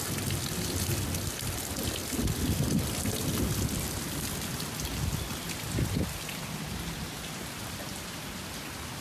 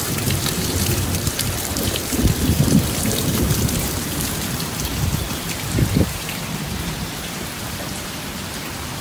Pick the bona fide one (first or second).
first